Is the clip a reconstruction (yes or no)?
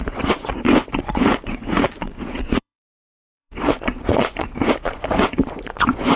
yes